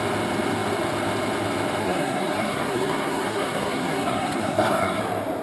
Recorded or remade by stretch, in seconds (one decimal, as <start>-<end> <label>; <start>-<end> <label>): 0.0-1.8 recorded; 1.8-5.0 remade; 5.0-5.4 recorded